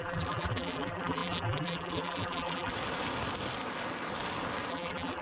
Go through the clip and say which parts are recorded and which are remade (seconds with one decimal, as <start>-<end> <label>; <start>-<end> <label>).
0.0-2.7 remade; 2.7-4.7 recorded; 4.7-5.2 remade

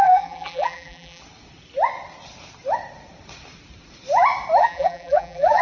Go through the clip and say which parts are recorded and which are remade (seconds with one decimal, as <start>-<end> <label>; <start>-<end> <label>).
0.0-1.2 remade; 1.2-4.6 recorded; 4.6-5.6 remade

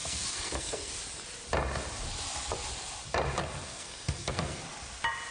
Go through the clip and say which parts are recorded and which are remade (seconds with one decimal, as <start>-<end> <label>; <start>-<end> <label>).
0.0-0.9 remade; 0.9-3.6 recorded; 3.6-4.6 remade; 4.6-5.3 recorded

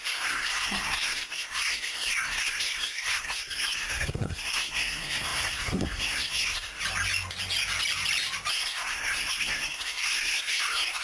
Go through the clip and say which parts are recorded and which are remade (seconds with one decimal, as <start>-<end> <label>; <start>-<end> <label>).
0.0-6.8 remade; 6.8-8.5 recorded; 8.5-11.0 remade

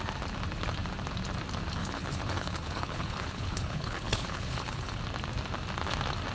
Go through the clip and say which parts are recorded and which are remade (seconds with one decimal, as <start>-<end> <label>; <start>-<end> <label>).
0.0-1.8 recorded; 1.8-5.0 remade; 5.0-6.3 recorded